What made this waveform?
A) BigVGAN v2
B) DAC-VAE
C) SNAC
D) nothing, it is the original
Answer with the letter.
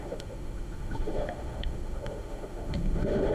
B